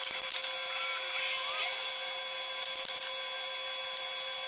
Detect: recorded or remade recorded